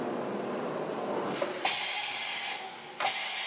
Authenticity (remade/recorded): recorded